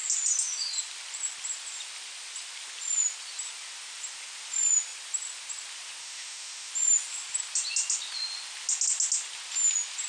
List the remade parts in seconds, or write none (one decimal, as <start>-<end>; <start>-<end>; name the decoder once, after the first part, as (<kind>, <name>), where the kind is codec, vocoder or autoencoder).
6.0-6.7 (autoencoder, DAC-VAE)